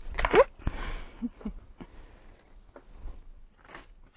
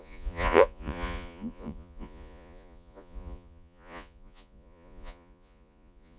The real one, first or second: first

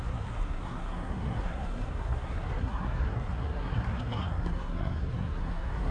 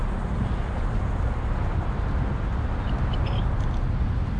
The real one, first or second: second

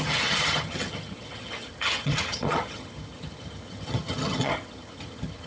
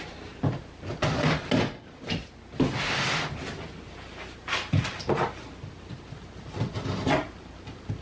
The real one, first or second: second